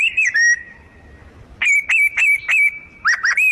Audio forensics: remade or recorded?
recorded